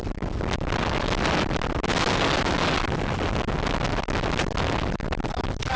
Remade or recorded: recorded